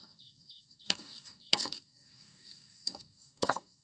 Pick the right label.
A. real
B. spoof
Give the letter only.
B